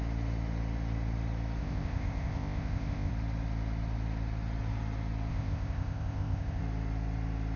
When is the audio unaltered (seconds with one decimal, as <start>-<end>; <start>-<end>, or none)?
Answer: 0.0-1.6; 3.1-5.3; 6.6-7.6